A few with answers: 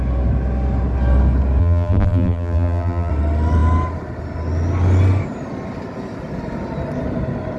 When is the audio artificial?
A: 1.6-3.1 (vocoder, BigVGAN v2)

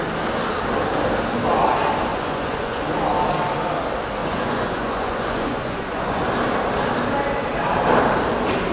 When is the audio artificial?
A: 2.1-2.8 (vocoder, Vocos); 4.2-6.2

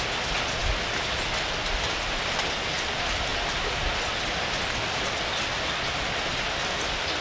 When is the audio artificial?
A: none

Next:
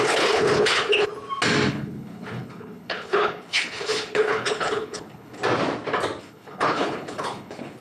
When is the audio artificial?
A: 0.0-1.1 (codec, HILCodec); 1.7-5.4; 6.2-7.8